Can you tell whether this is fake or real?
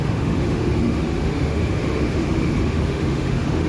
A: fake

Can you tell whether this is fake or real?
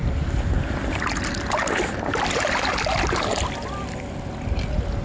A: real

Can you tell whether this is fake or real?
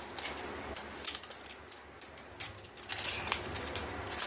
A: real